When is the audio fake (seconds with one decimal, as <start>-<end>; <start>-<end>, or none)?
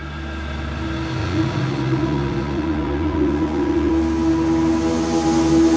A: 1.2-3.9